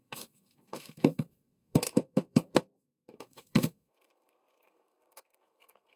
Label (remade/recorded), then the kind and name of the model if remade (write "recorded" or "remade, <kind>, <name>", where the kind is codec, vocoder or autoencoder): remade, codec, SNAC